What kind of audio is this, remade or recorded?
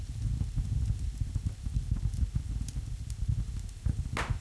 recorded